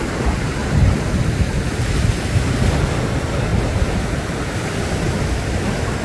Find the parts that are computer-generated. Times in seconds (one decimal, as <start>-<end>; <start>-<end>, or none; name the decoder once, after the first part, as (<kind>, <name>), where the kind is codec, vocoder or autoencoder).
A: 0.6-2.4 (vocoder, BigVGAN v2); 3.5-4.6